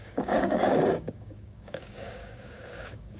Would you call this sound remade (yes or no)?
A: yes